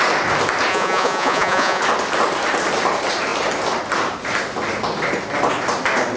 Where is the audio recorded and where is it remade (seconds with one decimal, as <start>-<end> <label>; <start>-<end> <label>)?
0.0-0.7 recorded; 0.7-1.8 remade; 1.8-6.2 recorded